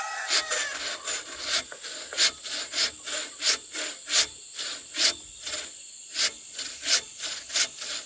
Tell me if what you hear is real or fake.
real